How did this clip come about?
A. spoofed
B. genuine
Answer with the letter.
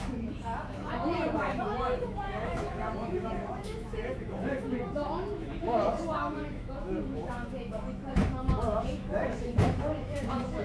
A